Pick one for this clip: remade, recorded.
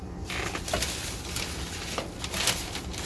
recorded